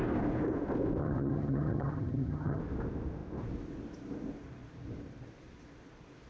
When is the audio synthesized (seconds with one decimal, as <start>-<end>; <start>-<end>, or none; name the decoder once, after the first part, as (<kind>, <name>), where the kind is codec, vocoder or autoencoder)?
1.0-2.6 (vocoder, HiFi-GAN)